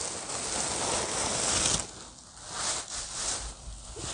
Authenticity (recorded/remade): recorded